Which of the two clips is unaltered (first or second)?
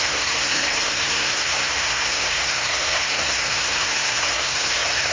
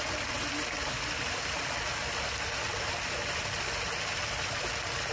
second